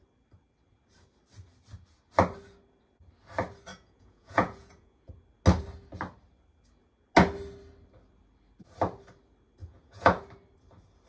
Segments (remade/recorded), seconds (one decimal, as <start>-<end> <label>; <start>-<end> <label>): 0.0-3.7 recorded; 3.7-5.1 remade; 5.1-9.6 recorded; 9.6-10.2 remade; 10.2-11.1 recorded

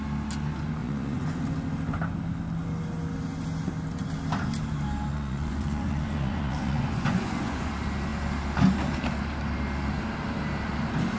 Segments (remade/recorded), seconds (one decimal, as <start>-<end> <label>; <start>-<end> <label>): 0.0-0.8 recorded; 0.8-1.4 remade; 1.4-5.1 recorded; 5.1-7.7 remade; 7.7-11.2 recorded

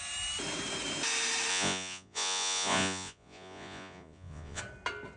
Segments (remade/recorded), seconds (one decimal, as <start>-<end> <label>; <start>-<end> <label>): 0.0-1.5 recorded; 1.5-4.6 remade; 4.6-5.2 recorded

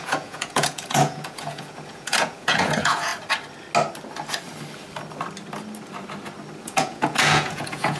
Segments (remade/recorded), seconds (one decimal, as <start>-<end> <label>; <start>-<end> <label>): 0.0-3.1 remade; 3.1-6.6 recorded; 6.6-8.0 remade